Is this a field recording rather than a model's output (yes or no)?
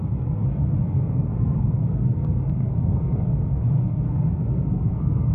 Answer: no